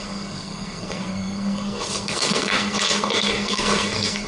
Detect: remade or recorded remade